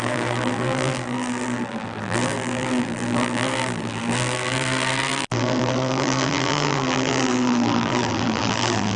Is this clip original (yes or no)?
no